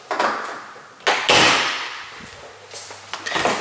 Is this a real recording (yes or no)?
yes